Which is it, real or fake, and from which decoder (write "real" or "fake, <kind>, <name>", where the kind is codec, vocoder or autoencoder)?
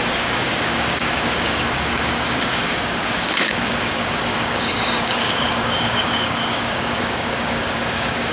fake, codec, DAC